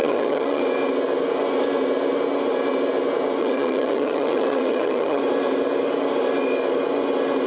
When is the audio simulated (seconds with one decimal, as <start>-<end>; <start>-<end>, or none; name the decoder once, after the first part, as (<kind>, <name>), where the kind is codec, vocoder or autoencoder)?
0.0-0.6 (vocoder, HiFi-GAN); 3.4-5.2